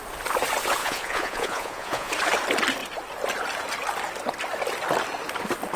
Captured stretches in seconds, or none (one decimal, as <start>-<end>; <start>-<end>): 0.0-0.8; 2.1-5.8